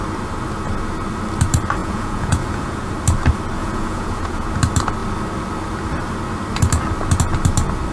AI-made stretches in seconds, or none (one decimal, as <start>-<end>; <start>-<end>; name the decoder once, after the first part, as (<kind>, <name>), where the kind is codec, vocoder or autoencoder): 1.8-2.9 (vocoder, Vocos); 3.6-4.5